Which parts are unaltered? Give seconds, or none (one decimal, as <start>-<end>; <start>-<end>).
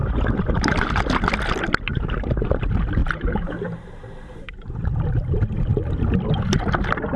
1.0-1.9; 2.6-3.0; 5.0-7.2